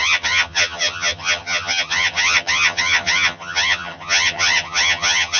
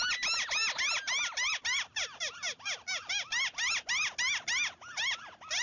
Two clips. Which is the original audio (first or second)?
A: second